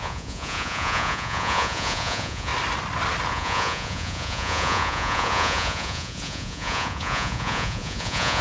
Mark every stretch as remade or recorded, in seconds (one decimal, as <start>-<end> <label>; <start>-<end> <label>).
0.0-2.5 remade; 2.5-3.3 recorded; 3.3-8.4 remade

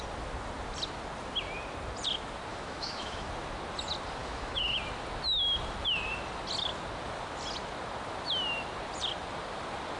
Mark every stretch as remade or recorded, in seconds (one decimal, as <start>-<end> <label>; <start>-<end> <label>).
0.0-2.5 recorded; 2.5-3.3 remade; 3.3-4.2 recorded; 4.2-4.8 remade; 4.8-10.0 recorded

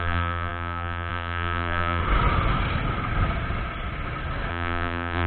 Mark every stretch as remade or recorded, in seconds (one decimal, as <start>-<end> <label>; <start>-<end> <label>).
0.0-2.0 remade; 2.0-4.5 recorded; 4.5-5.3 remade

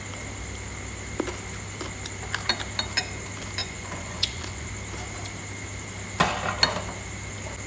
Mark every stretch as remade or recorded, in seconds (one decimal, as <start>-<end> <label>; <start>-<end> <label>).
0.0-3.6 recorded; 3.6-4.7 remade; 4.7-7.7 recorded

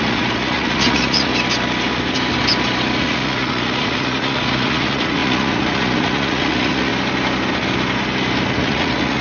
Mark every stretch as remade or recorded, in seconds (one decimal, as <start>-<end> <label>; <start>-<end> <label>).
0.0-1.3 remade; 1.3-3.0 recorded; 3.0-6.9 remade; 6.9-8.5 recorded; 8.5-9.2 remade

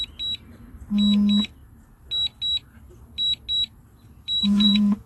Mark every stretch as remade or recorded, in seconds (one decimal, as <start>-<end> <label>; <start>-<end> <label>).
0.0-4.4 recorded; 4.4-5.1 remade

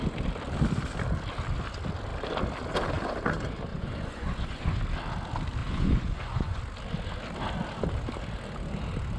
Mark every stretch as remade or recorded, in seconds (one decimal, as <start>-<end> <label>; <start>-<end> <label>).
0.0-3.7 recorded; 3.7-4.8 remade; 4.8-5.6 recorded; 5.6-6.6 remade; 6.6-9.2 recorded